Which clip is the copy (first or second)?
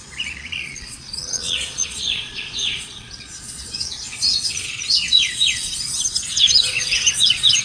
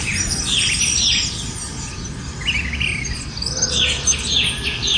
first